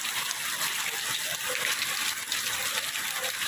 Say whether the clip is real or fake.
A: real